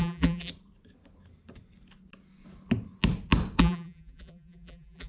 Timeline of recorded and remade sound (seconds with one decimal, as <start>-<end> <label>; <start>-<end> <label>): 0.0-0.5 remade; 0.5-3.6 recorded; 3.6-5.1 remade

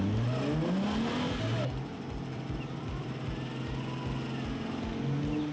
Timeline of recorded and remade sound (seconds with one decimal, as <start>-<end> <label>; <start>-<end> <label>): 0.0-1.9 recorded; 1.9-3.3 remade; 3.3-5.5 recorded

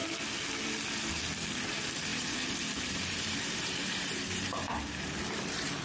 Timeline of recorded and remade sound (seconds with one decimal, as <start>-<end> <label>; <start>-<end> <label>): 0.0-2.1 recorded; 2.1-5.8 remade

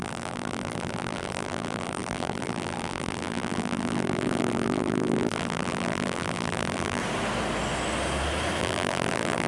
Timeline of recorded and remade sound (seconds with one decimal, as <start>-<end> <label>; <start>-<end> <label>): 0.0-7.0 remade; 7.0-8.6 recorded; 8.6-9.5 remade

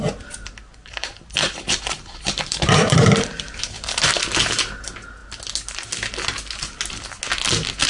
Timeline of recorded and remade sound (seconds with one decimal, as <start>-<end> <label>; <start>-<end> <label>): 0.0-0.8 recorded; 0.8-4.2 remade; 4.2-7.9 recorded

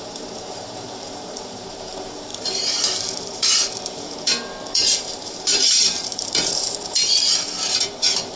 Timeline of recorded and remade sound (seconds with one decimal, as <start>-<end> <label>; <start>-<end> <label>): 0.0-8.4 remade

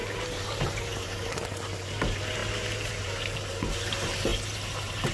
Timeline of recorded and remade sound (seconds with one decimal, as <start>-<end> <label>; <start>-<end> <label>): 0.0-5.1 remade

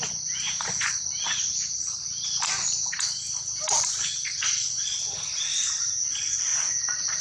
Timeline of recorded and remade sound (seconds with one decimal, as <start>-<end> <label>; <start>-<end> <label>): 0.0-7.2 recorded